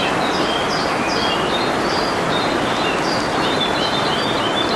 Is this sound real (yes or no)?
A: yes